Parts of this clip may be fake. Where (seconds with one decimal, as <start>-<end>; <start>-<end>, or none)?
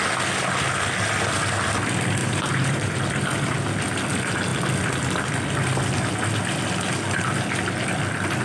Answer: 2.2-3.0